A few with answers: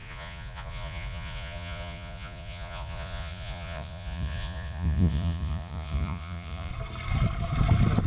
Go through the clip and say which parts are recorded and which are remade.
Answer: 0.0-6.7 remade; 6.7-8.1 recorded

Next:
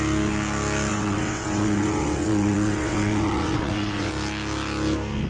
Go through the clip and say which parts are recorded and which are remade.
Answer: 0.0-0.9 recorded; 0.9-4.1 remade; 4.1-5.3 recorded

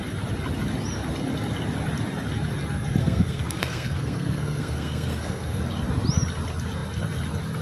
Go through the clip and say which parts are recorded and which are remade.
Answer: 0.0-3.0 recorded; 3.0-5.6 remade; 5.6-7.6 recorded

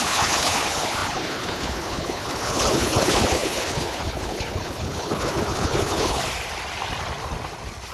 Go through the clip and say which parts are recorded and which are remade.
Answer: 0.0-6.2 remade; 6.2-7.9 recorded

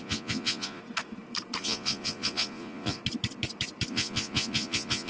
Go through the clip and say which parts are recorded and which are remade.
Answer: 0.0-0.8 remade; 0.8-1.6 recorded; 1.6-3.0 remade; 3.0-3.9 recorded; 3.9-5.1 remade

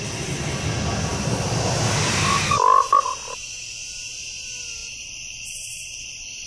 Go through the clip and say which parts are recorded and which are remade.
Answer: 0.0-6.5 recorded

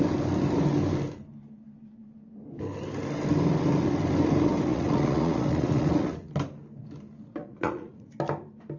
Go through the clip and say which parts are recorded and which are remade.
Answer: 0.0-4.7 recorded; 4.7-6.3 remade; 6.3-7.4 recorded; 7.4-8.1 remade; 8.1-8.8 recorded

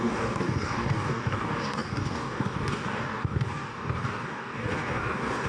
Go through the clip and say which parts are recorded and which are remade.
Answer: 0.0-5.5 remade